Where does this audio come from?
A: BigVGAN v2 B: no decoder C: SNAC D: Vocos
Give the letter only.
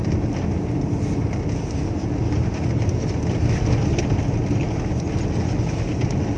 B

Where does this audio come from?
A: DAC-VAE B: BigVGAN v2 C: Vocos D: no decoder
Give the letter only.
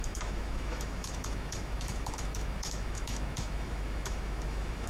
A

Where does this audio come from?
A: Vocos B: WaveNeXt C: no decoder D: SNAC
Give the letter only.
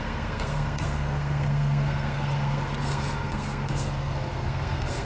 D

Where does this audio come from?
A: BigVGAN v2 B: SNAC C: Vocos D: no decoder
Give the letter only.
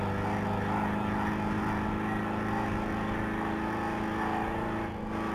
D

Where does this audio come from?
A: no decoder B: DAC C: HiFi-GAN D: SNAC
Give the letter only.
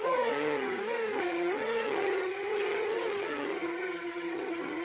C